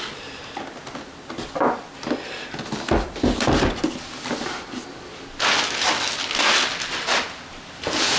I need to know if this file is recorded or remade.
recorded